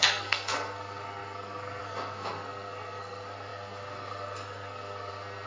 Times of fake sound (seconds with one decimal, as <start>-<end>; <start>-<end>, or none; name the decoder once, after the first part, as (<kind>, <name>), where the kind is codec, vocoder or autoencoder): 0.0-5.5 (codec, SNAC)